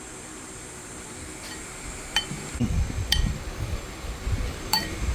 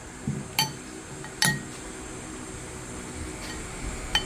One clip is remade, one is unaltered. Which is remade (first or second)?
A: first